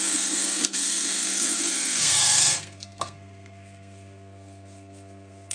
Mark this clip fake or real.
fake